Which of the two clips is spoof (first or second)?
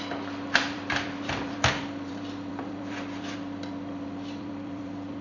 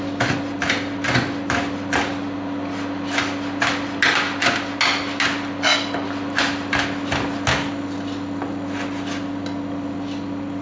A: first